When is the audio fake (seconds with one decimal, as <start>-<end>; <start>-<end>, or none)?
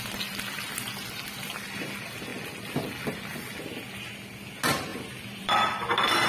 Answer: 4.9-5.5